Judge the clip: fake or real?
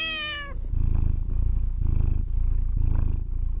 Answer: real